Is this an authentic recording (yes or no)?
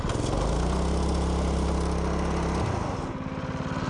yes